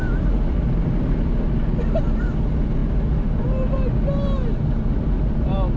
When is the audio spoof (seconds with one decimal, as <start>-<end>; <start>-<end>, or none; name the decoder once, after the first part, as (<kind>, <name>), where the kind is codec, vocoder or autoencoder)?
none